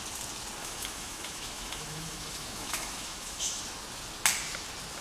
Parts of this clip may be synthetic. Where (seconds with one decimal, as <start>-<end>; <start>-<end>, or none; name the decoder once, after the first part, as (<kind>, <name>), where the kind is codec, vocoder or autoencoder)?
0.6-3.6 (autoencoder, DAC-VAE)